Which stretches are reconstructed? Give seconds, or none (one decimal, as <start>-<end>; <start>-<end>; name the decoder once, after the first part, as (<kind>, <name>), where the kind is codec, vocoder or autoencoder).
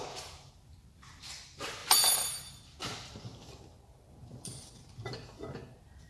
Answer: none